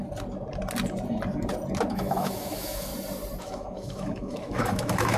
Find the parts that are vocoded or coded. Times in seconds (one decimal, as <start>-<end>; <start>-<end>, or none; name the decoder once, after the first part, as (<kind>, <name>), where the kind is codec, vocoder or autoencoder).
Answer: 1.9-2.9 (autoencoder, DAC-VAE); 3.4-5.2